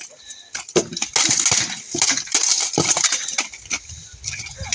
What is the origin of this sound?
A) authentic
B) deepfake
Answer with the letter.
A